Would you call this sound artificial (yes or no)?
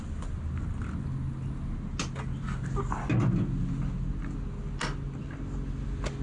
no